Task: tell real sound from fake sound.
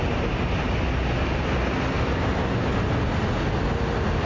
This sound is real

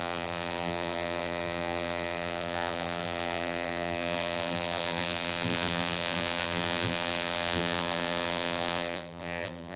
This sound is fake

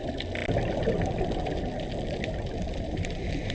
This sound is real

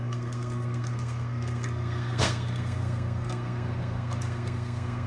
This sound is fake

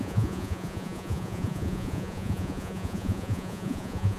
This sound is fake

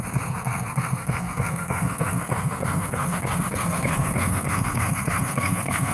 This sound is fake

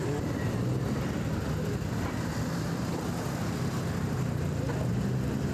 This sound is real